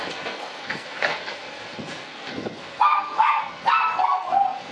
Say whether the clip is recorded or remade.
remade